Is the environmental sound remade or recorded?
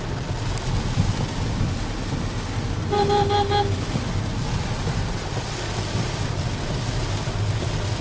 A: recorded